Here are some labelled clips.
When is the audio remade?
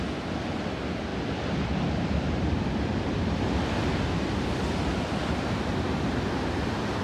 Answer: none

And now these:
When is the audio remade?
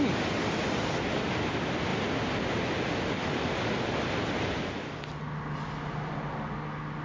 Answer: none